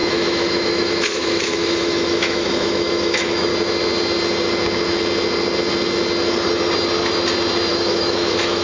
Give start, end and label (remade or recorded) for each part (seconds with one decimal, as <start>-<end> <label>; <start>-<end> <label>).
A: 0.0-3.5 remade; 3.5-7.7 recorded; 7.7-8.6 remade